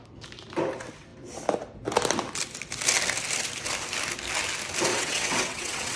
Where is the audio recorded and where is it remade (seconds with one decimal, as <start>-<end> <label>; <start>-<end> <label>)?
0.0-4.9 recorded; 4.9-6.0 remade